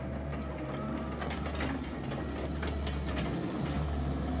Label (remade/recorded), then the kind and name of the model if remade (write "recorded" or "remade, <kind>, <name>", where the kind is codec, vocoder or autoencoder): recorded